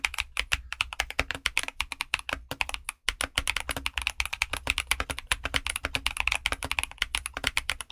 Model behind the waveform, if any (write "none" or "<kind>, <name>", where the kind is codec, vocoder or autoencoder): none